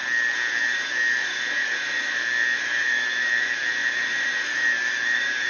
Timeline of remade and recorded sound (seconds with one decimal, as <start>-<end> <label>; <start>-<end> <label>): 0.0-0.6 recorded; 0.6-5.5 remade